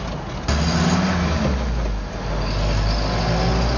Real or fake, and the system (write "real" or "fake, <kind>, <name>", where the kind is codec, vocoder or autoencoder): real